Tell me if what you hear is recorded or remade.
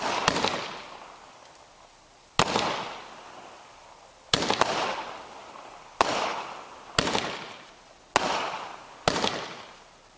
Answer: recorded